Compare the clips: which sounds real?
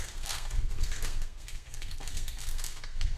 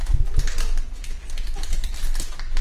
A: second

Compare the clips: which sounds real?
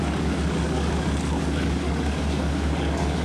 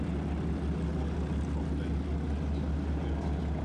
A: second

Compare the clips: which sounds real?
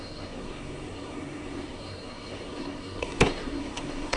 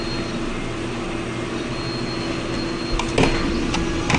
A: second